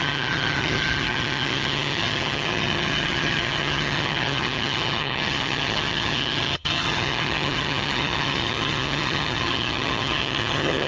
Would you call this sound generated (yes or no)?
yes